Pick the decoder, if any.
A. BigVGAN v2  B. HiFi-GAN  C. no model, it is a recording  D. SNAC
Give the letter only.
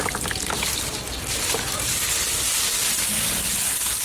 C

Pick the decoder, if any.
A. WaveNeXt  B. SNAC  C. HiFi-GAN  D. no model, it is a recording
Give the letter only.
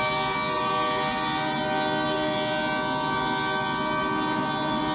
D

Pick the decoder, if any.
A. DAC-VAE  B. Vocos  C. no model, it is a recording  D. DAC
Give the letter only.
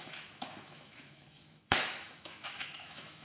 A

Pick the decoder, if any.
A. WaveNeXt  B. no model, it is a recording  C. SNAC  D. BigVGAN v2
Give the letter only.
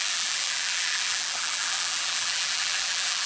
D